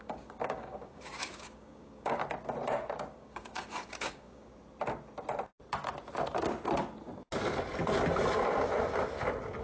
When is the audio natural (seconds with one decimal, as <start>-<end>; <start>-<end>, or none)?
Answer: 2.2-3.1; 4.5-9.6